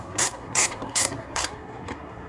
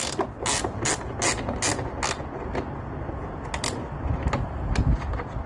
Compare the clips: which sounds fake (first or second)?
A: first